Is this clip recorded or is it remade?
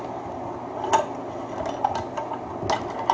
recorded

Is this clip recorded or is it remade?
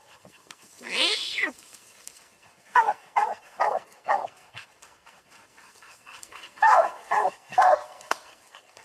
remade